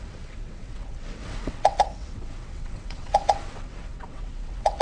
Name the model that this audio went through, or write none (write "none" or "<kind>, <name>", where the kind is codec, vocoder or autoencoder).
vocoder, WaveNeXt